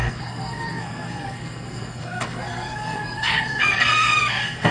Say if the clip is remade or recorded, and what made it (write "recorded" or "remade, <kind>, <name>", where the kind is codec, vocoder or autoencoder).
remade, codec, SNAC